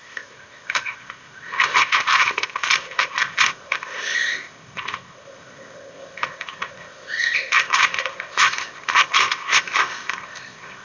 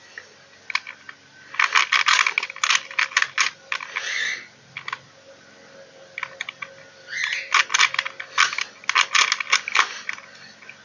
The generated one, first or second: first